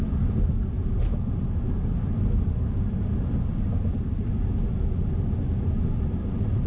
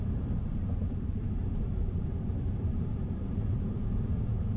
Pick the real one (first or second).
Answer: first